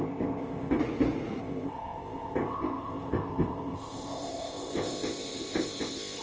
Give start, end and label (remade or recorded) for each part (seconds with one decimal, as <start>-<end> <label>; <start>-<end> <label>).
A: 0.0-0.8 remade; 0.8-1.4 recorded; 1.4-6.2 remade